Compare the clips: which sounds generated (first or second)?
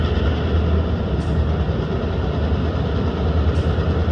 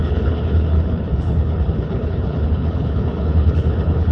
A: second